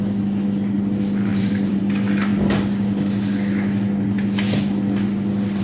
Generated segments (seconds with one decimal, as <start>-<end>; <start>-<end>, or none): 1.3-1.8

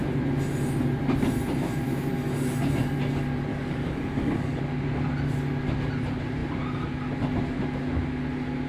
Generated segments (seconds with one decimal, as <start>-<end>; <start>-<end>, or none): 3.5-4.6

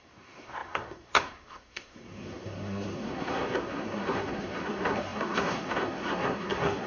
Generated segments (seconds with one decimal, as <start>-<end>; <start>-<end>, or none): 0.0-6.9

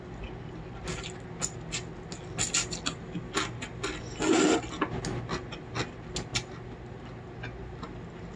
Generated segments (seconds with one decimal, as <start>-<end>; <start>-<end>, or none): none

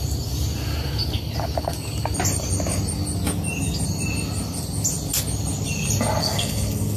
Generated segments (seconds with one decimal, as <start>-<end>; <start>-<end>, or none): 6.2-7.0